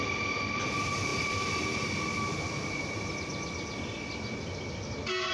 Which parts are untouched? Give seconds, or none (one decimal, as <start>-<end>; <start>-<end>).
0.0-5.3